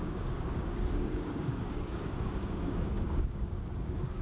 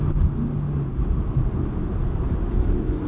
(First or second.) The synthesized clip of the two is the first